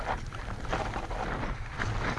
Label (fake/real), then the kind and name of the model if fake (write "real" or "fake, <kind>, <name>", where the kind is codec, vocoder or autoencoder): real